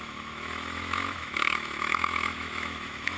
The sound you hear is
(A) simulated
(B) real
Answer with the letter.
A